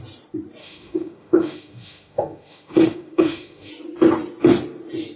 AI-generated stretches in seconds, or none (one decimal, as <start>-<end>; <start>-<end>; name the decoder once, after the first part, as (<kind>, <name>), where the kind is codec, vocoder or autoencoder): 0.6-3.7 (autoencoder, DAC-VAE)